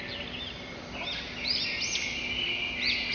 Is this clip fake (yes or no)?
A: no